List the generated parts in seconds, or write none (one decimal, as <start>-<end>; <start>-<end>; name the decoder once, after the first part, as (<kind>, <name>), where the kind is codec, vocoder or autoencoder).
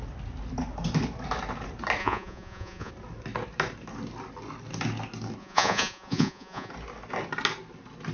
2.0-2.9 (vocoder, Vocos); 5.4-6.7